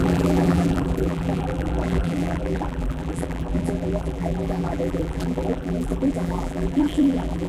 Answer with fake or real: fake